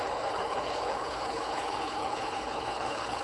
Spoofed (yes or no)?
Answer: yes